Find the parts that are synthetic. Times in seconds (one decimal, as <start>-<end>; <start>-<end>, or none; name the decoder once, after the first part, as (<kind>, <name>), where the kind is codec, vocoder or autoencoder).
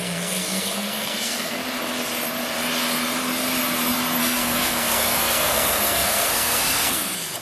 0.0-1.6 (codec, SNAC); 4.2-7.4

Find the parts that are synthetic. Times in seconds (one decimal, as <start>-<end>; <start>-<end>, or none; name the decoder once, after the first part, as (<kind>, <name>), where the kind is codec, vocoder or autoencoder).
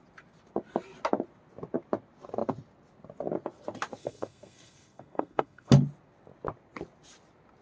4.0-5.7 (codec, SNAC)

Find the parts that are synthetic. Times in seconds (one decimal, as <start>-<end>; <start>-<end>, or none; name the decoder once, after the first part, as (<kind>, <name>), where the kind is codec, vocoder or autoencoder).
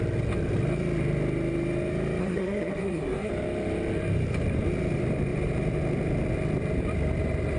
2.2-3.3 (codec, SNAC)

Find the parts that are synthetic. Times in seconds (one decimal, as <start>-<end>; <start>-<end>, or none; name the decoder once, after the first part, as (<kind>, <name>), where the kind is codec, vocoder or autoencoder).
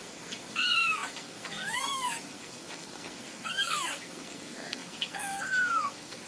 0.0-6.3 (codec, SNAC)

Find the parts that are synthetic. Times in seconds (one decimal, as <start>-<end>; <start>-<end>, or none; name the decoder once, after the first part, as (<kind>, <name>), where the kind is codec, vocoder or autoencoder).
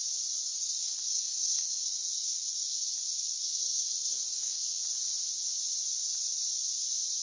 0.5-4.8 (codec, SNAC)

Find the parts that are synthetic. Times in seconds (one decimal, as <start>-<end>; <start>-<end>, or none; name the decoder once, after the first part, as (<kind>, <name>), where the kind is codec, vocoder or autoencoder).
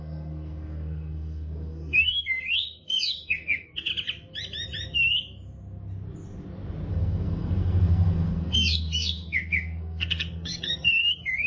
0.0-3.9 (codec, SNAC); 6.9-11.5